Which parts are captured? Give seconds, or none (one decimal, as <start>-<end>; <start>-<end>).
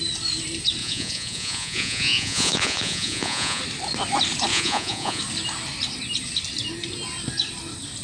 0.0-0.8; 3.6-4.5; 5.2-8.0